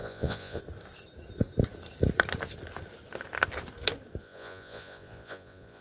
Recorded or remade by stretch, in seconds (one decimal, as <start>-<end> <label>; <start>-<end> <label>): 0.0-0.6 remade; 0.6-4.2 recorded; 4.2-5.8 remade